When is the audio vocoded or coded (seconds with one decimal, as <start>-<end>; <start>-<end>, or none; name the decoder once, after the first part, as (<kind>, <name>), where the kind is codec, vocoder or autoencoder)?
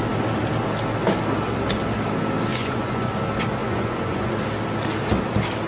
2.5-3.1 (vocoder, Vocos); 3.6-4.4